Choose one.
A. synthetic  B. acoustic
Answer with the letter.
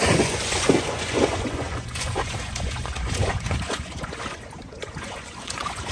A